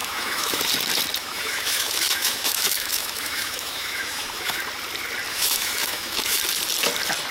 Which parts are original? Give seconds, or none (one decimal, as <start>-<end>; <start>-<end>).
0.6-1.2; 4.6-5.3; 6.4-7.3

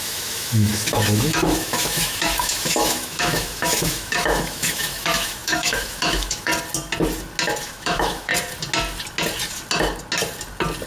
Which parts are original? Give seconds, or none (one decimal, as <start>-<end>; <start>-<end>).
6.5-7.6; 8.3-10.9

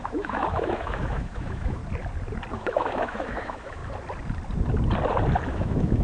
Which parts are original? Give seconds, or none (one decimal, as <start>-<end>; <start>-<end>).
1.8-2.5; 3.8-5.5

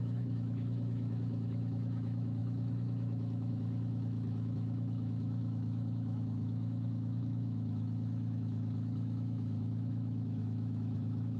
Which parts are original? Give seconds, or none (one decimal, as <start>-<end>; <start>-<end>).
none

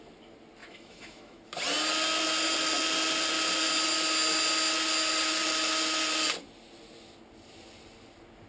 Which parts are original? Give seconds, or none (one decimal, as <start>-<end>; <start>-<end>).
0.0-0.6; 1.4-8.5